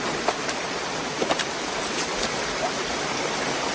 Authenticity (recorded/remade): recorded